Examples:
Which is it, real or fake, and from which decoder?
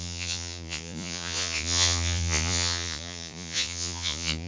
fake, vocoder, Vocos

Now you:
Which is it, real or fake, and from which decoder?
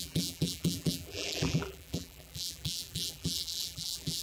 fake, vocoder, BigVGAN v2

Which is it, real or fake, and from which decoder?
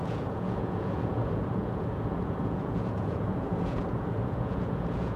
fake, vocoder, Vocos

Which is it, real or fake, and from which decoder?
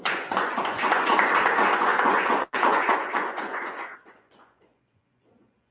fake, vocoder, Vocos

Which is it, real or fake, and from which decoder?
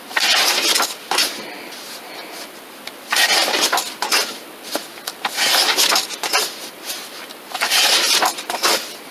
real